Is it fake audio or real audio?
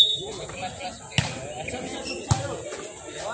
real